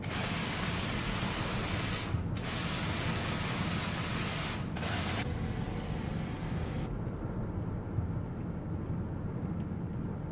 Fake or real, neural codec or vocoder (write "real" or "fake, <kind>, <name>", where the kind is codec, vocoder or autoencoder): real